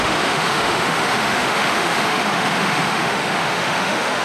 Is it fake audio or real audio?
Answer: fake